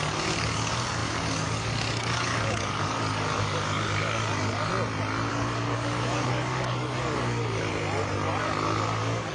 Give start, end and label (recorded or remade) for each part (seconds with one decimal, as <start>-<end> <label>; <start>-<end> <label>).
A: 0.0-4.7 remade; 4.7-5.3 recorded; 5.3-7.7 remade; 7.7-8.4 recorded; 8.4-9.3 remade